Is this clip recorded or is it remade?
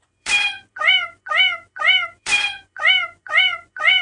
remade